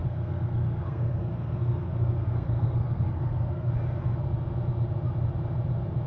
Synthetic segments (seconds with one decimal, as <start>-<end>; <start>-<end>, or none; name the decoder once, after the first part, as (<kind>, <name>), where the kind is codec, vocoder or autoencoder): 0.0-3.7 (codec, SNAC)

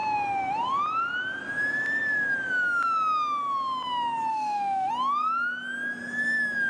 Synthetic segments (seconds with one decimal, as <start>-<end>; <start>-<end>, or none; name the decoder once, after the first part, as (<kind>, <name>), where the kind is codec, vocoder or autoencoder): 4.3-4.9 (autoencoder, DAC-VAE)

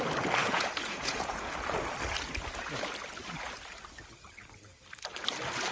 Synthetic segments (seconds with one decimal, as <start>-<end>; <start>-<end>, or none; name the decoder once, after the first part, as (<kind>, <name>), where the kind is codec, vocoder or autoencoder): 0.4-1.5 (vocoder, Vocos)

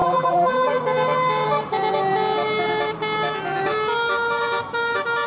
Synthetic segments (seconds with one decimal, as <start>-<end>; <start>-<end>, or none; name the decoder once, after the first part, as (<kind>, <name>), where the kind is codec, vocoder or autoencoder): 0.0-0.8 (vocoder, BigVGAN v2)

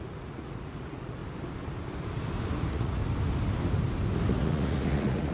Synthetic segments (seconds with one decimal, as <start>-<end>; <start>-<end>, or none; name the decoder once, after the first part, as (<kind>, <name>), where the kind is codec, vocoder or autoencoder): 0.0-1.2 (vocoder, Vocos); 2.6-3.0; 4.4-5.3

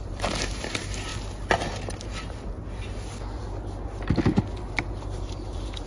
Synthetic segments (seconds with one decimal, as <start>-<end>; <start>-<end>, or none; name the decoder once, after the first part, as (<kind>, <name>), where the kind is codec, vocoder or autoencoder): 0.0-1.1 (vocoder, BigVGAN v2); 4.6-5.9

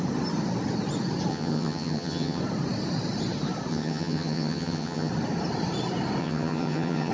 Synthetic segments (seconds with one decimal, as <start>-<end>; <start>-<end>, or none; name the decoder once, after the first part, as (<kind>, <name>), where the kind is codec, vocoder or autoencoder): 1.3-2.4 (vocoder, HiFi-GAN); 3.7-5.1; 6.2-7.1

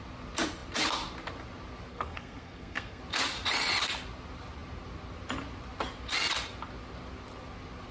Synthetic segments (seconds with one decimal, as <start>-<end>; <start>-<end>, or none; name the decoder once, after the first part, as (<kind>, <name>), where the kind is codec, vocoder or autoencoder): 1.9-3.0 (codec, SNAC)